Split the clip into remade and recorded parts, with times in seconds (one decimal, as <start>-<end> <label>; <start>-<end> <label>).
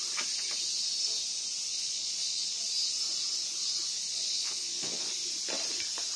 0.0-1.7 recorded; 1.7-2.6 remade; 2.6-4.1 recorded; 4.1-5.1 remade; 5.1-6.2 recorded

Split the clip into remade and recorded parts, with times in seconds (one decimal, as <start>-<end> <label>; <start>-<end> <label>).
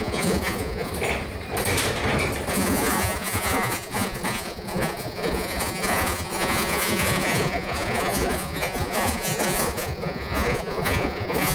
0.0-0.9 remade; 0.9-2.5 recorded; 2.5-11.5 remade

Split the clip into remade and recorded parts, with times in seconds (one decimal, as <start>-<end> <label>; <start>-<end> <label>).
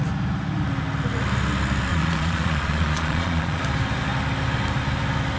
0.0-1.9 recorded; 1.9-3.6 remade; 3.6-5.4 recorded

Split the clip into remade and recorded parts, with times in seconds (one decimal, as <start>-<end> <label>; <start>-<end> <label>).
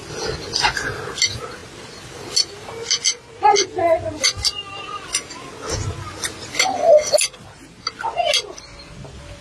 0.0-9.4 recorded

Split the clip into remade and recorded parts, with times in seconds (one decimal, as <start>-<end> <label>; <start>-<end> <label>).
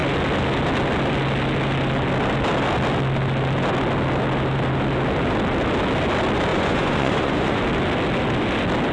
0.0-6.5 recorded; 6.5-7.6 remade; 7.6-8.9 recorded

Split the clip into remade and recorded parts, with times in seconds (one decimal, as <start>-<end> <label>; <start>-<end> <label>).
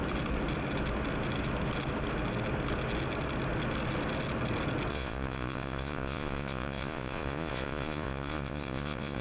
0.0-4.9 recorded; 4.9-9.2 remade